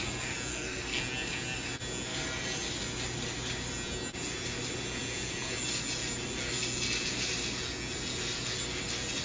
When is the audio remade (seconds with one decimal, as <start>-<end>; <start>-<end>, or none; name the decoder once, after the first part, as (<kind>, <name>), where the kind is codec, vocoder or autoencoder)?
0.5-1.0 (codec, SNAC)